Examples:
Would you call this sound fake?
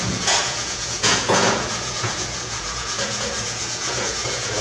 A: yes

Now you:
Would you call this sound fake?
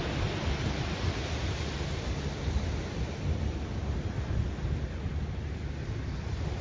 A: no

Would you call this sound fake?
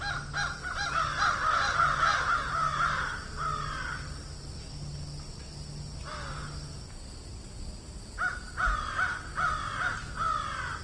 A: no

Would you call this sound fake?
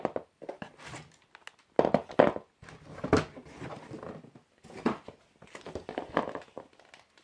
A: no